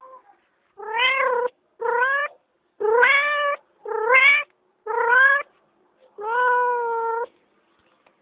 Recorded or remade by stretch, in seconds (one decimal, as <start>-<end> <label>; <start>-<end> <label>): 0.0-4.7 recorded; 4.7-5.6 remade; 5.6-8.2 recorded